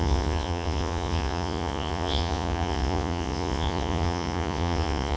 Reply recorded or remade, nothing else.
remade